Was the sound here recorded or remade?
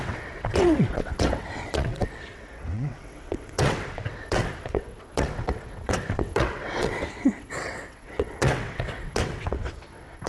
remade